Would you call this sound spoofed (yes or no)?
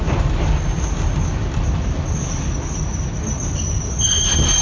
no